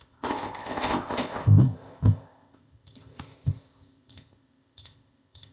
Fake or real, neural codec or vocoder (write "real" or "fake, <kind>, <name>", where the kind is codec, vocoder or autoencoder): fake, codec, ZipCodec